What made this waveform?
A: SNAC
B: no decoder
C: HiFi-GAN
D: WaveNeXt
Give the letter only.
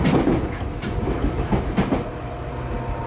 B